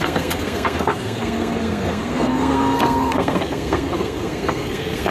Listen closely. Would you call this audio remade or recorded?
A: remade